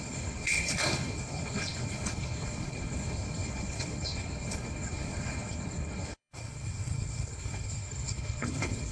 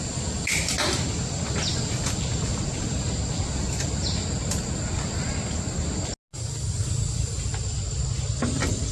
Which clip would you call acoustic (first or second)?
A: second